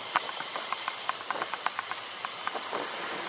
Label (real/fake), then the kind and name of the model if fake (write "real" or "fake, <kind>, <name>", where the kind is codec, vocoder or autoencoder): real